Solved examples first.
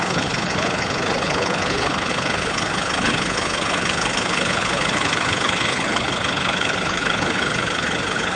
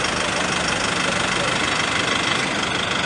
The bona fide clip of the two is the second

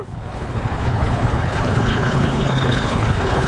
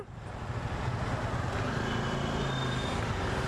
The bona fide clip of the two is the second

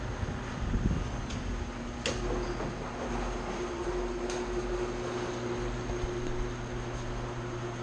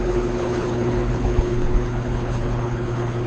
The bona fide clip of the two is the first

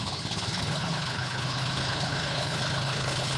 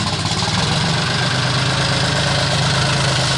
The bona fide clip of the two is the second